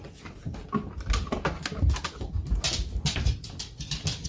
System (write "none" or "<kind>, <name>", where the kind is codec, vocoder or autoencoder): none